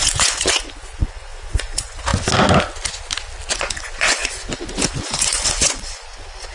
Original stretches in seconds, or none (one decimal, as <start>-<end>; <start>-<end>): 2.1-3.5